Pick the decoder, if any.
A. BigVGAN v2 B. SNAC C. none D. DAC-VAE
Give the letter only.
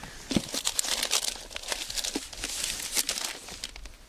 C